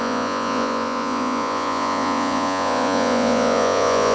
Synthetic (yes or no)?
yes